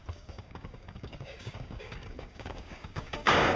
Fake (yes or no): yes